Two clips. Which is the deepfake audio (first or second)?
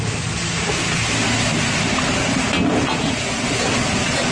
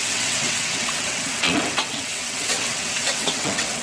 second